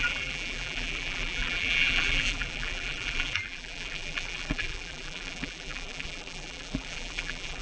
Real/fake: fake